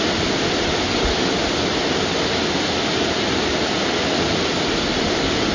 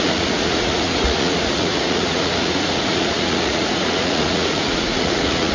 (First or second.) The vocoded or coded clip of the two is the second